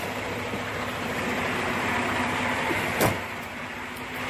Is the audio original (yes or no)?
yes